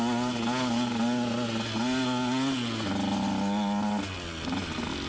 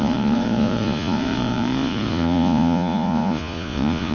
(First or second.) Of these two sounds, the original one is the first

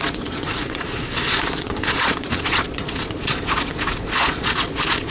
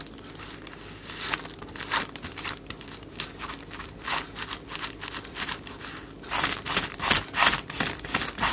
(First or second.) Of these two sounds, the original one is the second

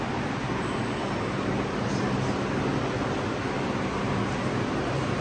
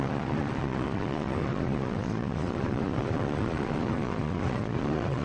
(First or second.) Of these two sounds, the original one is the first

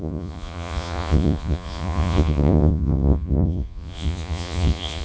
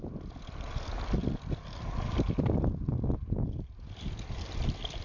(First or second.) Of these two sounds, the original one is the second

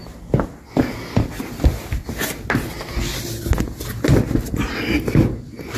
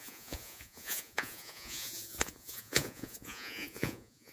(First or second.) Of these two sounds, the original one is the first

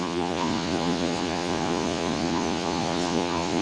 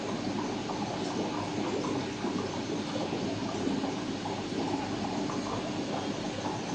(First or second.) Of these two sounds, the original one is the second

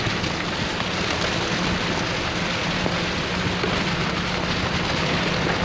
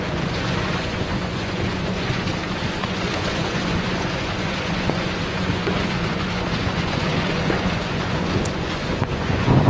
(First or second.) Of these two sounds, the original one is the first